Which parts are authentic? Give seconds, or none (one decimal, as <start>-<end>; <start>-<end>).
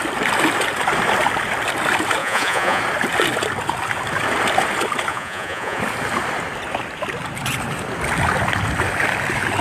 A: 0.0-2.2; 2.8-5.1; 5.8-9.6